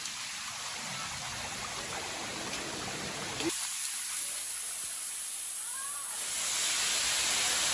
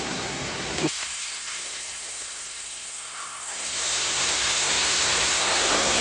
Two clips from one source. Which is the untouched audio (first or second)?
first